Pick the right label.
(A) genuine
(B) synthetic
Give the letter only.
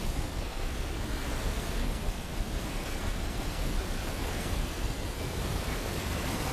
B